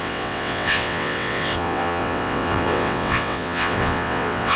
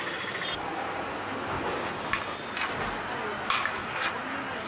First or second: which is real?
second